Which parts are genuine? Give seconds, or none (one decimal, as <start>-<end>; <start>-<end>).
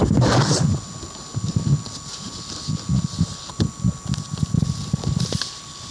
0.0-3.5